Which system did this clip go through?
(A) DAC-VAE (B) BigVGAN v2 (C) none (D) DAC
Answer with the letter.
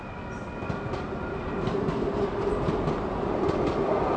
C